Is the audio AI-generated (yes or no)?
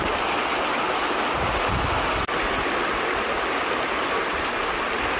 no